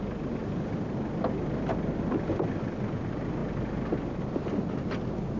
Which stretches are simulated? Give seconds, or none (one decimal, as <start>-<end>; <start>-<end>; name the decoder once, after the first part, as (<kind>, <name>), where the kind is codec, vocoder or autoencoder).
none